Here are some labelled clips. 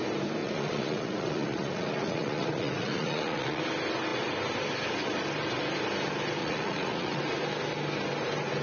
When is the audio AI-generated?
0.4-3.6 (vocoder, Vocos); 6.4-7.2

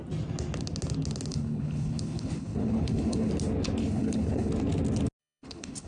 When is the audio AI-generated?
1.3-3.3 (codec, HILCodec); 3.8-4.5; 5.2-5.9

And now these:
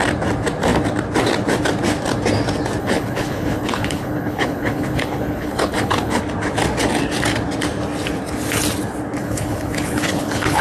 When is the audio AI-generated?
2.8-6.2 (codec, HILCodec); 9.2-10.6

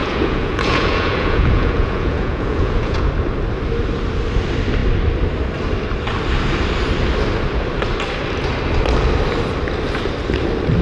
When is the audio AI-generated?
0.0-3.1 (vocoder, Vocos)